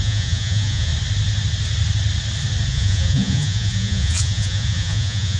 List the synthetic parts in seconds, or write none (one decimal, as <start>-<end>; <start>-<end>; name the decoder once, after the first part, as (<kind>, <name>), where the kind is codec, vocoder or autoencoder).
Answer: 0.0-0.9 (vocoder, Vocos); 2.7-5.4